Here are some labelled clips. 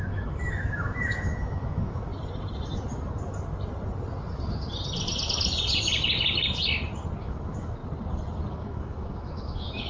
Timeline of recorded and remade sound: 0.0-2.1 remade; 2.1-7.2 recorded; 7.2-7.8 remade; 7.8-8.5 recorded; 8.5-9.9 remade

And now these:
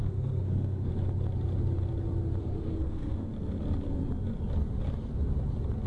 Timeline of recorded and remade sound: 0.0-0.9 remade; 0.9-2.4 recorded; 2.4-3.3 remade; 3.3-5.9 recorded

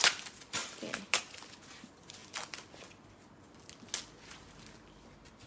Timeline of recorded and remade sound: 0.0-0.6 remade; 0.6-1.2 recorded; 1.2-2.2 remade; 2.2-5.5 recorded

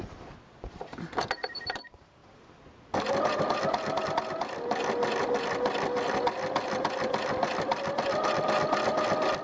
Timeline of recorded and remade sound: 0.0-9.4 recorded